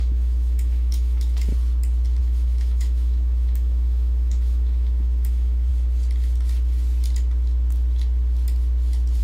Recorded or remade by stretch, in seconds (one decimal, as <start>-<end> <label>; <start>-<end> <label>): 0.0-1.5 remade; 1.5-2.2 recorded; 2.2-5.7 remade; 5.7-9.2 recorded